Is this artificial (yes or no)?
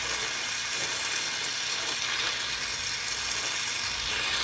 no